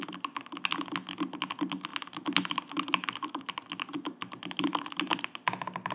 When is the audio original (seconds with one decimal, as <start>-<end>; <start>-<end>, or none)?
0.0-5.9